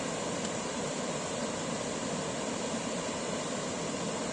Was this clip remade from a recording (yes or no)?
no